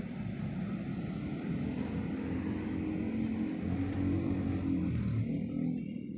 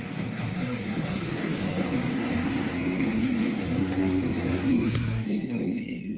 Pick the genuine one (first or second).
first